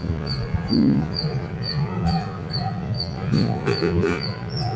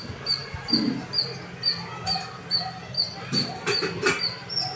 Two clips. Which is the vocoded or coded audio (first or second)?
first